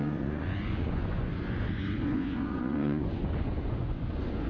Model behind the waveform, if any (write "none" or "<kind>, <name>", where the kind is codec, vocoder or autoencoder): vocoder, Vocos